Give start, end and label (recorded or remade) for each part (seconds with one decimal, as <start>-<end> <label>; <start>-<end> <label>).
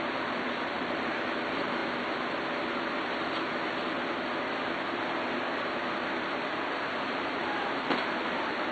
0.0-1.8 remade; 1.8-7.0 recorded; 7.0-8.7 remade